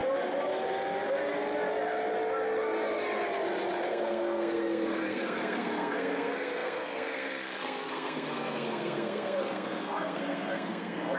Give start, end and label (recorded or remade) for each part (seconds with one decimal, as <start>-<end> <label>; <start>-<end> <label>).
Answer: 0.0-3.8 recorded; 3.8-11.2 remade